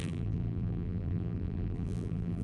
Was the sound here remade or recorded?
remade